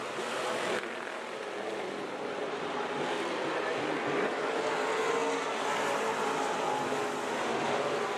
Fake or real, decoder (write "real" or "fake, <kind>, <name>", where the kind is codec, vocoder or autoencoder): real